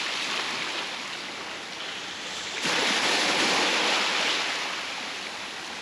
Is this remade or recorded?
recorded